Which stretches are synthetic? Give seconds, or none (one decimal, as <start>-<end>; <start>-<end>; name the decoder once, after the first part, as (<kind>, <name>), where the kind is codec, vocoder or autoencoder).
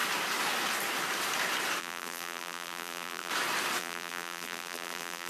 1.8-3.3 (vocoder, BigVGAN v2); 3.8-5.3